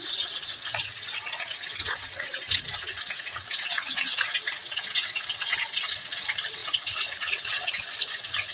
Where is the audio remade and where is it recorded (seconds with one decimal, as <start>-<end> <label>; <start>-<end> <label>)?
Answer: 0.0-8.5 remade